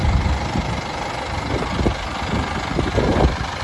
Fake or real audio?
real